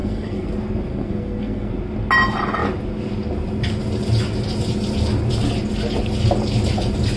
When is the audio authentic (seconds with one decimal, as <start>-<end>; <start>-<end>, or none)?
0.5-0.9; 1.7-7.2